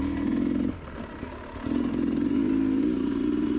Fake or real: real